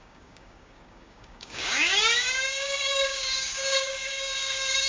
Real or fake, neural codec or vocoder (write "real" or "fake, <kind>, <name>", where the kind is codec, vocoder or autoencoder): fake, codec, DAC